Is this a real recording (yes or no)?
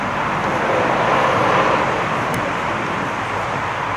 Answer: no